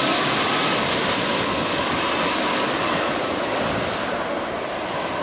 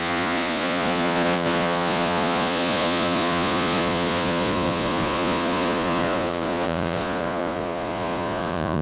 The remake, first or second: second